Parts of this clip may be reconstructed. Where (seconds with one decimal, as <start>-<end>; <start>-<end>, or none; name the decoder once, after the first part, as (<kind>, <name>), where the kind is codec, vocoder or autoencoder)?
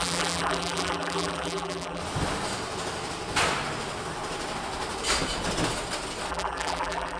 0.0-2.0 (vocoder, BigVGAN v2); 6.3-7.2